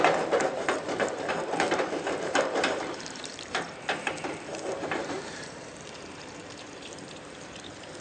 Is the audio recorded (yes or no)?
no